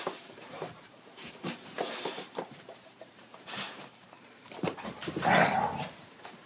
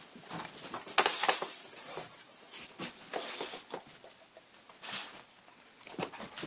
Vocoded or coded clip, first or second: first